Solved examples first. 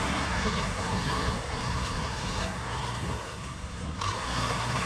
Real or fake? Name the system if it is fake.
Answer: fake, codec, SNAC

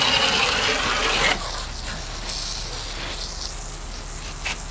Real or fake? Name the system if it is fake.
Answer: real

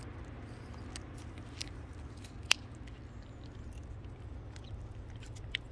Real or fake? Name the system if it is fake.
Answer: real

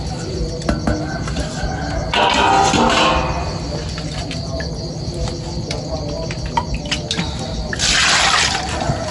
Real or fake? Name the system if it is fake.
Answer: real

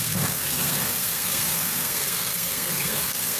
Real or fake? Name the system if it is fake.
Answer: fake, codec, SNAC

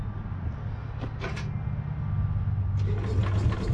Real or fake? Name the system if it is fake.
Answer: real